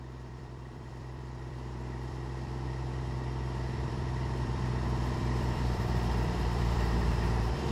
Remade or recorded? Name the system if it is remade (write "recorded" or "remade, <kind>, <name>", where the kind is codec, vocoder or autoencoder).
remade, vocoder, BigVGAN v2